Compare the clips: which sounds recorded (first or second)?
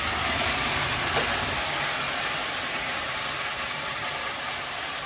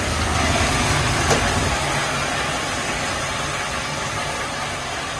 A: second